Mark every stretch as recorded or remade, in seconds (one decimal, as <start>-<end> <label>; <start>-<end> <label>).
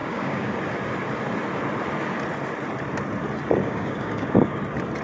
0.0-0.5 remade; 0.5-3.6 recorded; 3.6-4.6 remade; 4.6-5.0 recorded